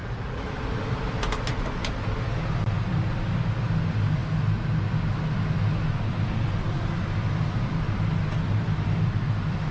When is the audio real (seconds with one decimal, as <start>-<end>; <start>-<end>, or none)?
0.5-9.7